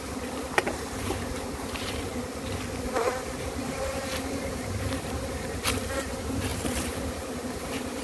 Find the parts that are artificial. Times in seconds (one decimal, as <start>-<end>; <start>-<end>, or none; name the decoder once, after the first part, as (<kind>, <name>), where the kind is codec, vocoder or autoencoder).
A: 0.0-2.1 (vocoder, BigVGAN v2); 3.7-8.0